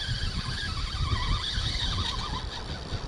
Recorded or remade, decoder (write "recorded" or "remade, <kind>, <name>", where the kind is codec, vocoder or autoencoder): recorded